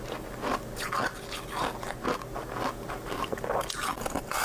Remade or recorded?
recorded